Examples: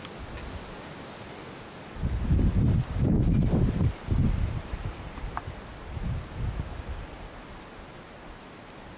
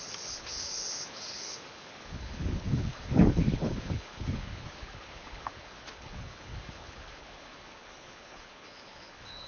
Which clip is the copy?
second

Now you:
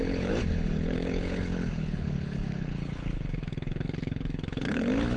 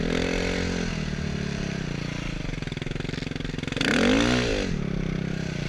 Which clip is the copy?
first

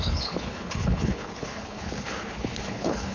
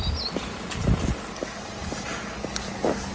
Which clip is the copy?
first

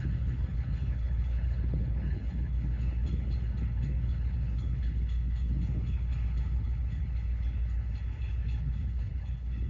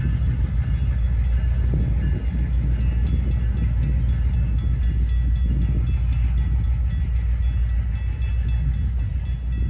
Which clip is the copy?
first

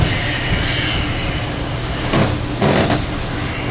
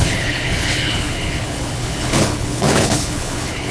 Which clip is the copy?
second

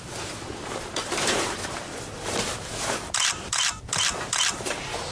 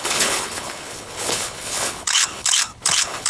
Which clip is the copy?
second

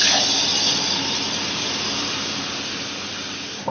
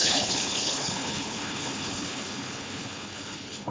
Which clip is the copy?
second